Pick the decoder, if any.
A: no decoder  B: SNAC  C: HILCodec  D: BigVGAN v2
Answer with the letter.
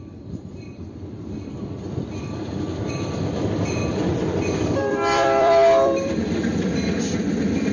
D